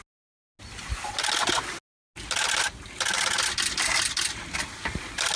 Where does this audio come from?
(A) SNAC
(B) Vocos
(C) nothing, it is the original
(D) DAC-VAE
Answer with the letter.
C